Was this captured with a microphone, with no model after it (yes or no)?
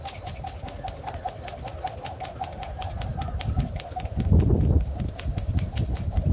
yes